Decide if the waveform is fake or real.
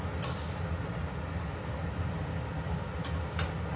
real